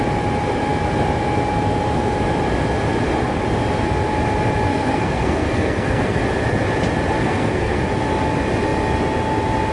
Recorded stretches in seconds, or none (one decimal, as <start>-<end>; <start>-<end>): 0.0-4.7; 6.2-7.2; 7.8-9.7